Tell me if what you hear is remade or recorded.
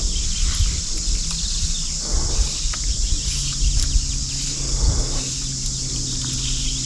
recorded